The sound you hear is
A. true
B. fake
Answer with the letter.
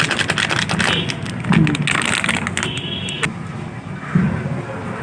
A